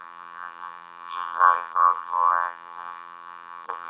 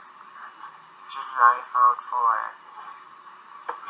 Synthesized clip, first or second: first